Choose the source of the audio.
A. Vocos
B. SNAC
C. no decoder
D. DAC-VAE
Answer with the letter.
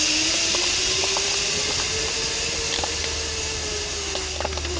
C